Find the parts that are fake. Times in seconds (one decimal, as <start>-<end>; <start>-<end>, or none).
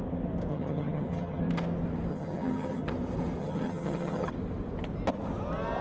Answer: 0.5-1.4; 2.1-2.9; 3.4-4.3